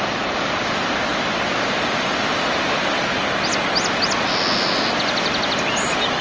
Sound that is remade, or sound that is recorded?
recorded